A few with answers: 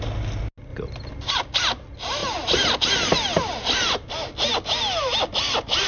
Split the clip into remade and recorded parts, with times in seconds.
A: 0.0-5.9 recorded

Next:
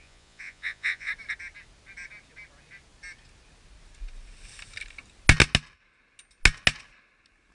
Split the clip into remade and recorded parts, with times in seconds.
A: 0.0-1.1 remade; 1.1-7.5 recorded